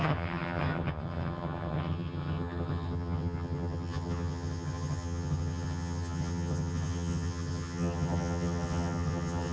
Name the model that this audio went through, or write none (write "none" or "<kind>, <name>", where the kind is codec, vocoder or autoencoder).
vocoder, HiFi-GAN